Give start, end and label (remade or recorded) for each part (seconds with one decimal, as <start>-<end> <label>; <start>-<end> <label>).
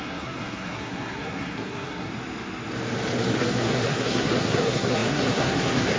0.0-2.1 remade; 2.1-3.4 recorded; 3.4-6.0 remade